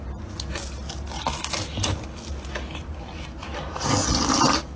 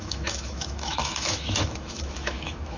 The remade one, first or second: second